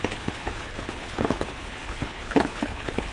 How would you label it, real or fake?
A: fake